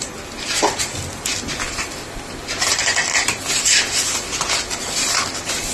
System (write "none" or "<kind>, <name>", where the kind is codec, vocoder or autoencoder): none